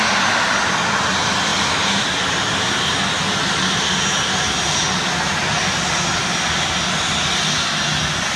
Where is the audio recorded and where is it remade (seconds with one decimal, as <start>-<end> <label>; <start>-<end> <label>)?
0.0-8.4 recorded